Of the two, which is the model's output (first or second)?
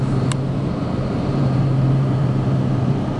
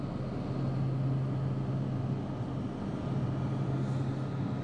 first